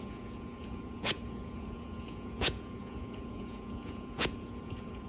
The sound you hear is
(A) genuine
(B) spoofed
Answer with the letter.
B